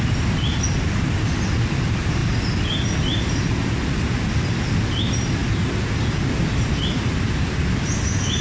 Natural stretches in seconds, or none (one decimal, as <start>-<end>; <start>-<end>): 0.0-8.4